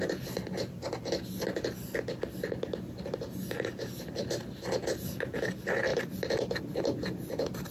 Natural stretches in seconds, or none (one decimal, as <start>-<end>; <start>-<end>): 0.0-7.7